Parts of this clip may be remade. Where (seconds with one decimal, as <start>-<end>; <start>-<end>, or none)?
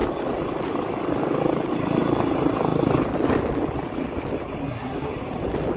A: 4.6-5.1